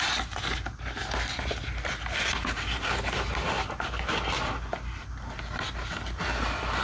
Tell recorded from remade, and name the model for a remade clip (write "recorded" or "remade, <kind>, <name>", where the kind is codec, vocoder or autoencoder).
recorded